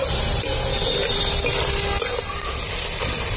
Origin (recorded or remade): recorded